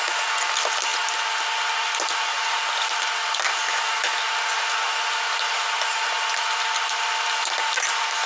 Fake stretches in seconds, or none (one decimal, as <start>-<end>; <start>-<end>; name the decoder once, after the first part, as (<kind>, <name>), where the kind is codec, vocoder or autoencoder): none